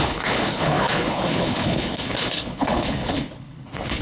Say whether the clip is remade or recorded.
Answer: remade